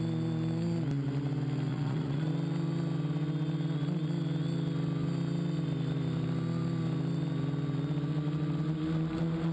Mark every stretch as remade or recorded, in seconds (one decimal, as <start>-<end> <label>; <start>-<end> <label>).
0.0-1.7 recorded; 1.7-2.3 remade; 2.3-9.5 recorded